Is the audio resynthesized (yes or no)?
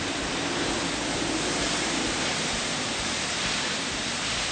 yes